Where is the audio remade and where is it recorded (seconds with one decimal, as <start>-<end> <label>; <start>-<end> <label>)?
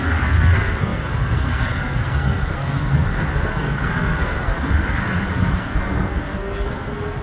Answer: 0.0-7.2 remade